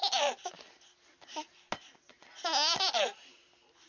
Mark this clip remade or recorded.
recorded